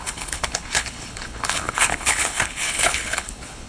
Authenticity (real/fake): fake